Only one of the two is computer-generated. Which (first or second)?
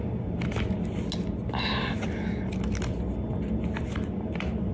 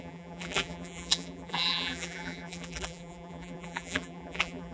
second